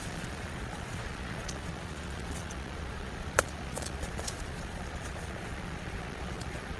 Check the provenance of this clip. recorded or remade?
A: remade